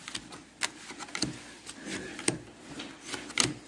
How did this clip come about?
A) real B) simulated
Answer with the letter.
A